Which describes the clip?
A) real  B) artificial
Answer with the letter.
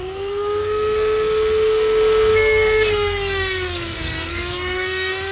B